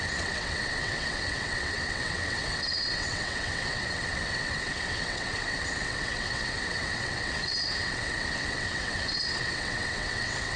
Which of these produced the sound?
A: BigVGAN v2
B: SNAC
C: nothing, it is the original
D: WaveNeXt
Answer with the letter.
D